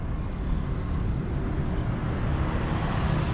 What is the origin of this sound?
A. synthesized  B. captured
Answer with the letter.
B